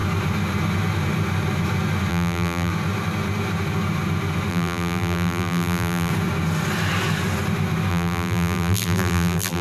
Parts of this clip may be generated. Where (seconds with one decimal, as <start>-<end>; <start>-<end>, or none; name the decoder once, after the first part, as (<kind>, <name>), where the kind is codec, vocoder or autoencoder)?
2.1-2.7 (vocoder, BigVGAN v2); 4.5-6.1; 7.9-9.6